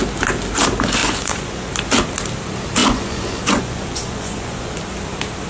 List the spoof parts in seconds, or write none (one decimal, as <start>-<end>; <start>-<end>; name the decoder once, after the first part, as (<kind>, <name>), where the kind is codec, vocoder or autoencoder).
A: 1.0-1.7 (vocoder, Vocos); 2.8-4.7